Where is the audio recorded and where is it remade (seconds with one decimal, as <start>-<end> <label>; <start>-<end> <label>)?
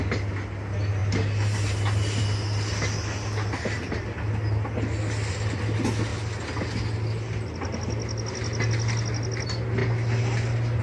0.0-10.8 recorded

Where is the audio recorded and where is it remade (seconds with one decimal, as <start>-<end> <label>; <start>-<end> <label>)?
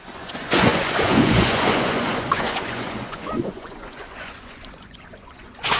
0.0-5.8 remade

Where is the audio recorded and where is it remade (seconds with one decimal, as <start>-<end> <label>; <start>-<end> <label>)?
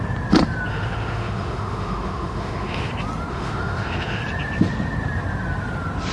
0.0-0.7 recorded; 0.7-2.9 remade; 2.9-3.3 recorded; 3.3-4.2 remade; 4.2-6.1 recorded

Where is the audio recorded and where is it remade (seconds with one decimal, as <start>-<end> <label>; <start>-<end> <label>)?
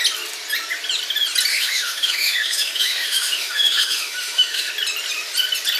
0.0-1.5 recorded; 1.5-4.7 remade; 4.7-5.8 recorded